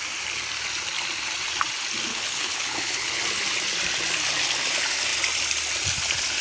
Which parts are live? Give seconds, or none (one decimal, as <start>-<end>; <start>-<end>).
0.0-2.1; 3.2-6.4